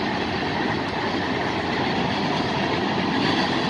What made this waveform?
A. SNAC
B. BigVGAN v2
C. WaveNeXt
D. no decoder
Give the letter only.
D